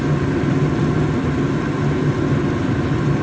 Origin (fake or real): real